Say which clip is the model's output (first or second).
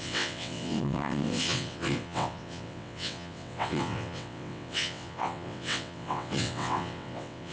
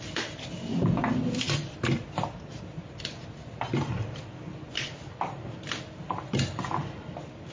first